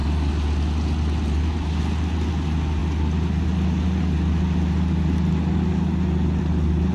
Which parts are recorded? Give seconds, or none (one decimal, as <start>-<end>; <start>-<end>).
0.0-6.9